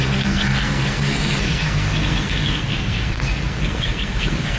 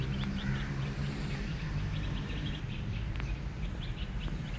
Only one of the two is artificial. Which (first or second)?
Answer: first